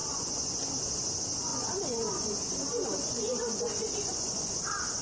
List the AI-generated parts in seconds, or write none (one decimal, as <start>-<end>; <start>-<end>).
0.0-0.7; 1.5-4.5

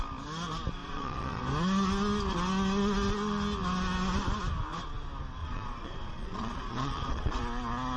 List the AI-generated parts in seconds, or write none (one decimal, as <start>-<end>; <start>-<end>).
0.8-1.4; 5.4-7.4

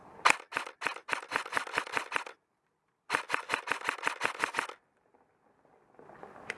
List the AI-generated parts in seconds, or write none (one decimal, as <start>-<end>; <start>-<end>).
none

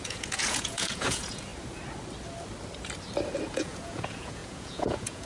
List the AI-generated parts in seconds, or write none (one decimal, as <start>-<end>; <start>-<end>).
0.0-1.5; 3.5-5.3

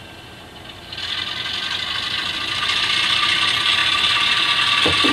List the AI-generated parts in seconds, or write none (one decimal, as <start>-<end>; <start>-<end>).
none